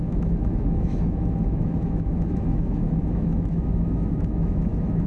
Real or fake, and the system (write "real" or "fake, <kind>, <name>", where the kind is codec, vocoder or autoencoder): fake, autoencoder, DAC-VAE